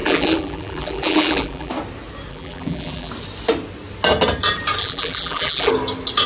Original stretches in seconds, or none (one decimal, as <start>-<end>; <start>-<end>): 1.7-2.3; 3.1-4.8; 5.7-6.3